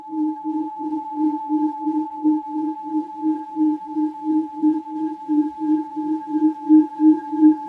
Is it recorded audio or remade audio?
remade